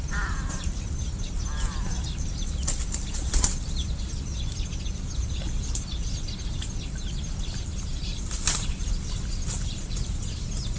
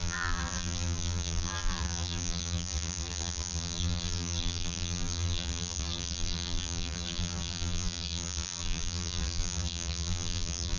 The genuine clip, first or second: first